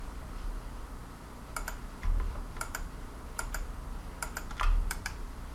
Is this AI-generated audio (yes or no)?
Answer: yes